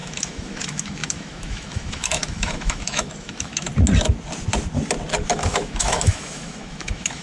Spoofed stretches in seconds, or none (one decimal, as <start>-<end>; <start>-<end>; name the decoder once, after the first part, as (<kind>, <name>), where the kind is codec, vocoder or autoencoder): 0.0-3.7 (autoencoder, DAC-VAE); 5.3-7.2